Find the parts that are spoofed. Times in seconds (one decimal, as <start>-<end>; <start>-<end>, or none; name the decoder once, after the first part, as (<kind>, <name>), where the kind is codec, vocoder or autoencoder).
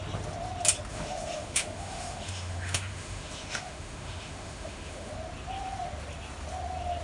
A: 0.9-5.1 (autoencoder, DAC-VAE)